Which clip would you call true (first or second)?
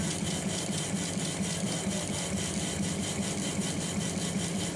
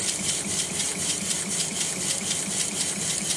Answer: first